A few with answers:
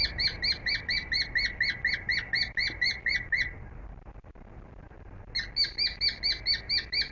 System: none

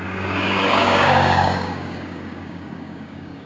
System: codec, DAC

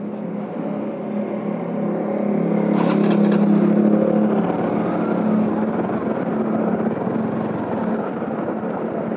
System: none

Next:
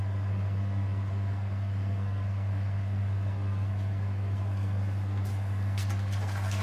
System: codec, SNAC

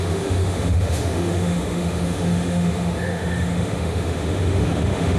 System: autoencoder, DAC-VAE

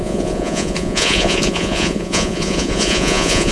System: vocoder, Vocos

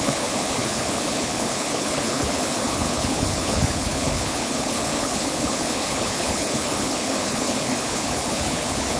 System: codec, HILCodec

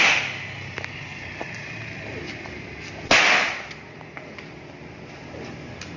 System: none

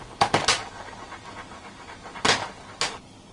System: none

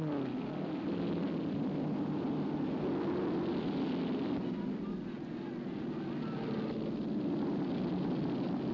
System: none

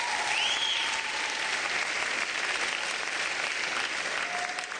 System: none